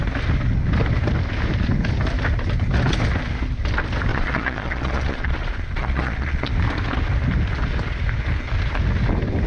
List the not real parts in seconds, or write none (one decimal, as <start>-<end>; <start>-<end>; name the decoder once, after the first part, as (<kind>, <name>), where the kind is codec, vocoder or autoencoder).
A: 4.1-6.5 (vocoder, Vocos)